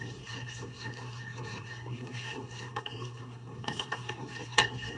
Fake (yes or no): yes